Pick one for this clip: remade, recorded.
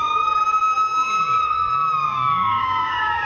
remade